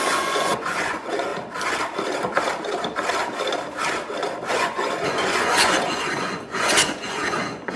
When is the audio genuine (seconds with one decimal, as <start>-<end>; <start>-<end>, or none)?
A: 1.3-4.5